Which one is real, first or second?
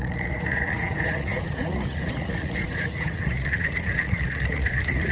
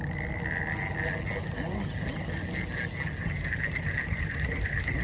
second